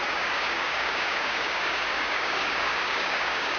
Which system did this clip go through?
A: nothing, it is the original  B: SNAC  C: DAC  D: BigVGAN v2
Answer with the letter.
C